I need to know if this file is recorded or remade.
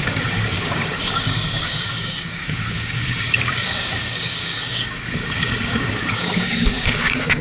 remade